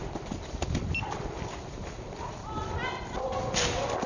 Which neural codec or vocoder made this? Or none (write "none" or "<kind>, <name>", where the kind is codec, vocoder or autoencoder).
vocoder, BigVGAN v2